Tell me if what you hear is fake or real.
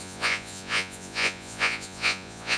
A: fake